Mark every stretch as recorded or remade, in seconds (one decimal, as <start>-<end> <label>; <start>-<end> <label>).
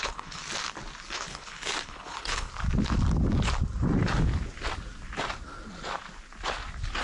0.0-0.4 remade; 0.4-1.1 recorded; 1.1-2.5 remade; 2.5-7.0 recorded